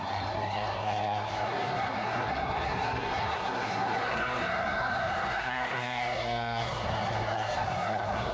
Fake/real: fake